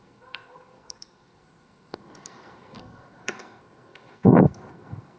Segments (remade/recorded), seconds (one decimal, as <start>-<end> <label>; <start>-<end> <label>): 0.0-5.2 remade